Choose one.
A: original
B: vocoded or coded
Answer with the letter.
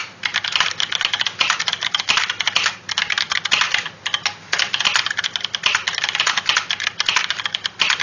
A